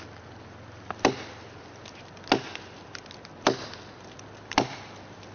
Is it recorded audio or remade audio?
recorded